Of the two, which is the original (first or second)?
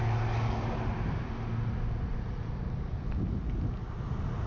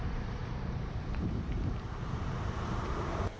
first